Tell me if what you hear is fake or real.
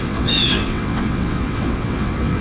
fake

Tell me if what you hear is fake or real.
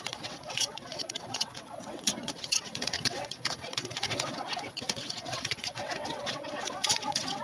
fake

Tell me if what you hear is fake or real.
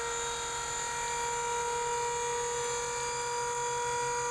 real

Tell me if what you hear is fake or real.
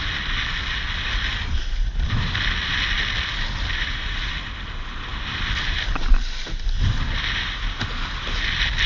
real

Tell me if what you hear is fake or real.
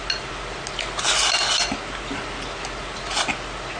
real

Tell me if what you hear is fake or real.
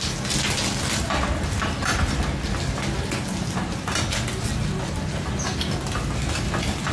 real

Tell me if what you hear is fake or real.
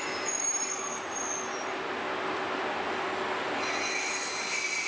real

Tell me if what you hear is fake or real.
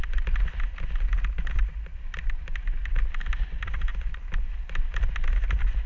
real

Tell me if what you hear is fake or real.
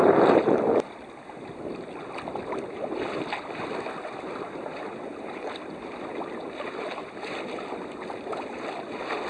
real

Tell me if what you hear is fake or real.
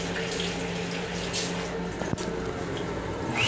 real